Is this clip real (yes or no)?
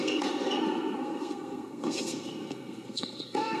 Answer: no